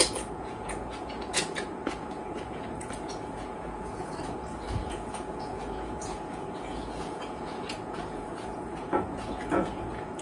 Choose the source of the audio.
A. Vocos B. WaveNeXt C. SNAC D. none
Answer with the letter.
A